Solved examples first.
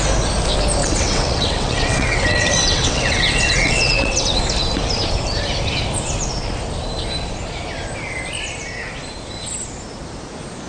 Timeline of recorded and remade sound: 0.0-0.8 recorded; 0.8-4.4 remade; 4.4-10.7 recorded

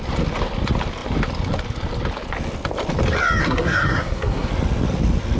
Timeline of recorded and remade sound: 0.0-3.4 recorded; 3.4-4.5 remade; 4.5-5.4 recorded

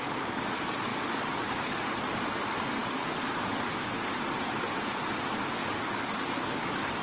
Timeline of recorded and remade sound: 0.0-5.6 recorded; 5.6-7.0 remade

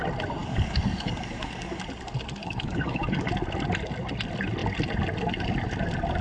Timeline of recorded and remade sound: 0.0-0.4 recorded; 0.4-1.8 remade; 1.8-2.4 recorded; 2.4-3.3 remade; 3.3-6.2 recorded

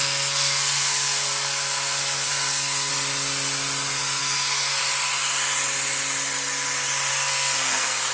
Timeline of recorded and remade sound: 0.0-2.9 remade; 2.9-4.2 recorded; 4.2-4.8 remade; 4.8-7.1 recorded; 7.1-8.1 remade